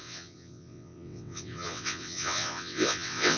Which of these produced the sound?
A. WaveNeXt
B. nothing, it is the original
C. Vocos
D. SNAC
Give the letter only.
A